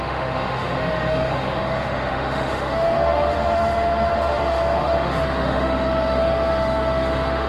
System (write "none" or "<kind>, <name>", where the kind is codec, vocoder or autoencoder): autoencoder, DAC-VAE